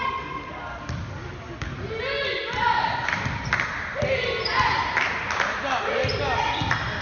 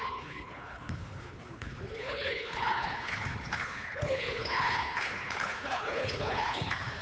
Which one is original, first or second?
first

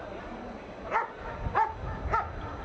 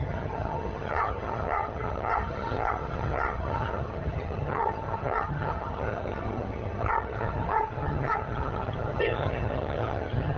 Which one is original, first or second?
first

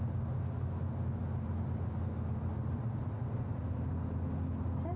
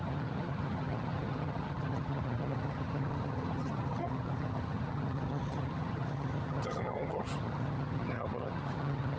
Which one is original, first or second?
first